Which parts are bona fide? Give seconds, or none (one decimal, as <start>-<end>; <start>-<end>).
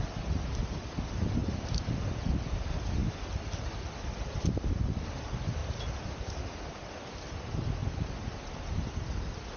0.0-5.6; 6.2-7.8; 8.5-9.6